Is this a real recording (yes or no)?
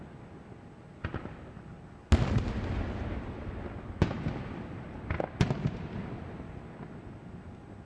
yes